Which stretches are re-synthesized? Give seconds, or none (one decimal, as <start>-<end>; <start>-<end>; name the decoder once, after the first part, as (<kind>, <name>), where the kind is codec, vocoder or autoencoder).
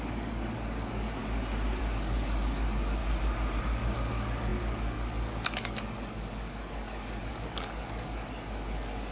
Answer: 0.0-1.2 (codec, DAC); 1.8-3.0; 3.6-9.1